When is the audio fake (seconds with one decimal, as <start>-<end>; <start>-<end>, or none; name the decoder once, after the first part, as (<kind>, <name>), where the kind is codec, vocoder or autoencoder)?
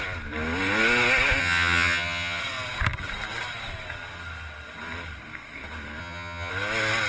1.4-2.4 (vocoder, HiFi-GAN); 6.0-6.5